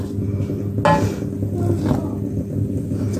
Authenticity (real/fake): real